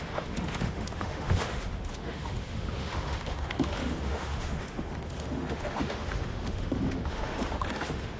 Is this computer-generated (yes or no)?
yes